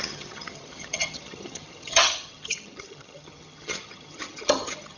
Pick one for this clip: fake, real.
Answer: fake